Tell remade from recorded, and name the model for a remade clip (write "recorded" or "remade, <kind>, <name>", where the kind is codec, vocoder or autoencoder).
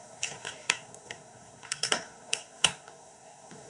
remade, codec, SNAC